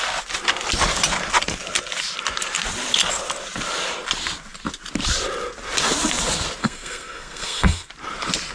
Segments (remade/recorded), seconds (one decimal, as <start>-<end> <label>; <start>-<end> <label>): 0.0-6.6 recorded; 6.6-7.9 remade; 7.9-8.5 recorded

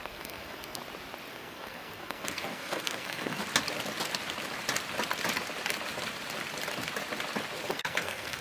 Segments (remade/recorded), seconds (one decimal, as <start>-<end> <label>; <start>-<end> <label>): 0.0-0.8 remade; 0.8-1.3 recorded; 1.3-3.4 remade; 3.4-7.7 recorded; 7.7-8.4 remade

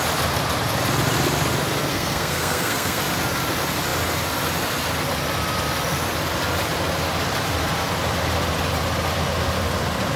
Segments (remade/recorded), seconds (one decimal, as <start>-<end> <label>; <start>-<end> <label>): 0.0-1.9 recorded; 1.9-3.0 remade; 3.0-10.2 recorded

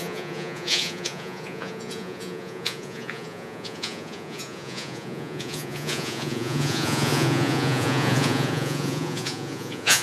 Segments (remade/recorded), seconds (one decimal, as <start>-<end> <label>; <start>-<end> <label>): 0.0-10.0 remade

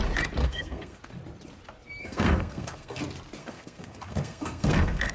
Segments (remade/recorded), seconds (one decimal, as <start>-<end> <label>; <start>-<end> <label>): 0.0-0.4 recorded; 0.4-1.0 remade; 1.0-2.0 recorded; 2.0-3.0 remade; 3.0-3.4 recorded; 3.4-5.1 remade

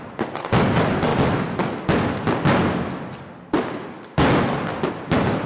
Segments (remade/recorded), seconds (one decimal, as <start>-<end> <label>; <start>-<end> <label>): 0.0-5.5 recorded

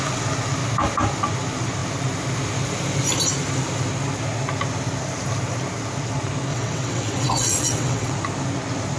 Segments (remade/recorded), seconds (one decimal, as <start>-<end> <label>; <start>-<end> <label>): 0.0-6.5 recorded; 6.5-8.1 remade; 8.1-9.0 recorded

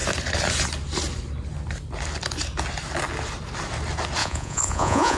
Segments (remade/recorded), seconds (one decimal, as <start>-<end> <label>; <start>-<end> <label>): 0.0-4.2 recorded; 4.2-5.2 remade